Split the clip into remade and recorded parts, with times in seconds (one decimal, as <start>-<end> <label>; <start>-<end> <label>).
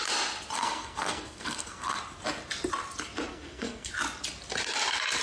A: 0.0-0.6 recorded; 0.6-2.0 remade; 2.0-3.3 recorded; 3.3-3.9 remade; 3.9-5.2 recorded